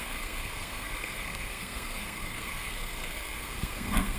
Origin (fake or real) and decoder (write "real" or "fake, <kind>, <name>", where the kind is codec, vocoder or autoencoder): fake, codec, SNAC